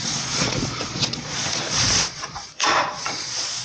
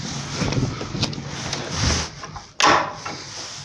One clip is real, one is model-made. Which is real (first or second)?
second